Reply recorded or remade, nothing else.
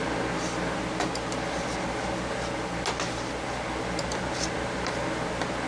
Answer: recorded